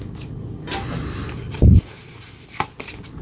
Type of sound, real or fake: real